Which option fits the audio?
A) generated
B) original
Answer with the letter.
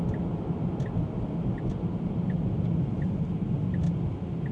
B